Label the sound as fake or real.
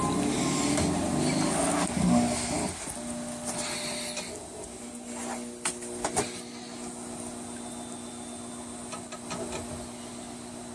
real